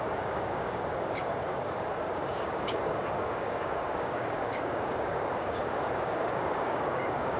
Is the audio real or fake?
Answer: fake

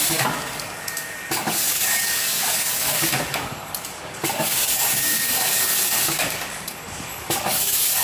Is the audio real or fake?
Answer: fake